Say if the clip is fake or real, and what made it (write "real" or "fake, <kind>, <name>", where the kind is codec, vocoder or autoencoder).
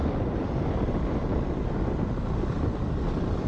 real